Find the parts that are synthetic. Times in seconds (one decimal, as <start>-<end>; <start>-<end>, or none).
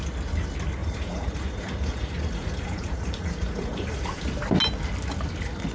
0.8-4.2